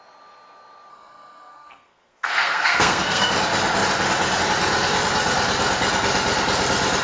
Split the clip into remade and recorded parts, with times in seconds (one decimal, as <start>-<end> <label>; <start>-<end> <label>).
0.0-0.9 recorded; 0.9-3.3 remade; 3.3-7.0 recorded

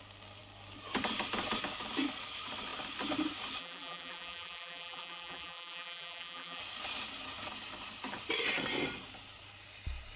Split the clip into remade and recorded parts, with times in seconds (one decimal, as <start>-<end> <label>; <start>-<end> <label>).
0.0-3.6 recorded; 3.6-6.6 remade; 6.6-10.2 recorded

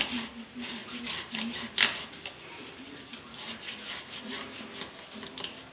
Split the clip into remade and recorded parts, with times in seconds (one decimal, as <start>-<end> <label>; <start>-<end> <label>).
0.0-5.7 recorded

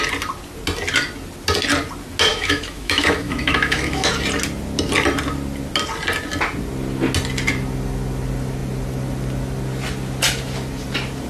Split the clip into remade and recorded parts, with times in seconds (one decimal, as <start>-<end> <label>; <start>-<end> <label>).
0.0-2.3 recorded; 2.3-4.1 remade; 4.1-11.3 recorded

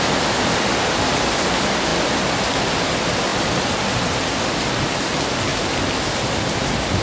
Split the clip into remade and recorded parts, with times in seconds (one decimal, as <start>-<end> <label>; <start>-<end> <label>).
0.0-3.3 recorded; 3.3-4.2 remade; 4.2-5.5 recorded; 5.5-7.0 remade

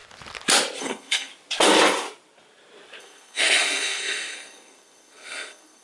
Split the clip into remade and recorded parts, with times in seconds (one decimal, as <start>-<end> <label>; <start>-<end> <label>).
0.0-0.8 recorded; 0.8-1.3 remade; 1.3-3.0 recorded; 3.0-5.8 remade